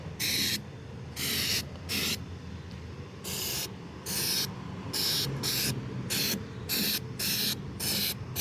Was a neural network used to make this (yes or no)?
no